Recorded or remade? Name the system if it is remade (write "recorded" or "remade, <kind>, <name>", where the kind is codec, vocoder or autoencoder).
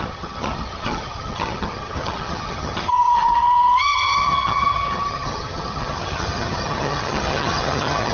remade, vocoder, HiFi-GAN